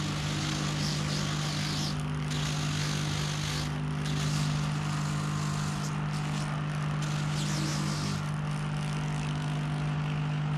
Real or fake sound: real